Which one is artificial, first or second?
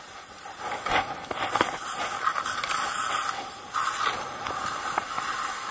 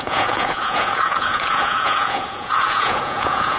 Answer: second